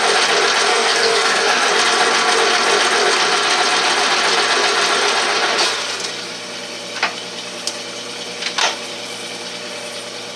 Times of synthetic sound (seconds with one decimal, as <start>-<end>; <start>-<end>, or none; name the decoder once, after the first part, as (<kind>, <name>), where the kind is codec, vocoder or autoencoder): 0.7-1.7 (codec, SNAC)